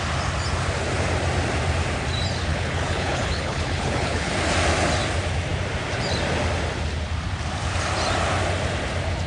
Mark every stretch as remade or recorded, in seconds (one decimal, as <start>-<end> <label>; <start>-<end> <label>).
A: 0.0-2.5 recorded; 2.5-4.3 remade; 4.3-9.3 recorded